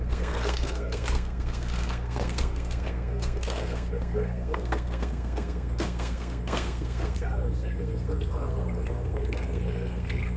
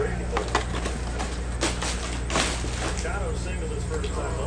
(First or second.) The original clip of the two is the second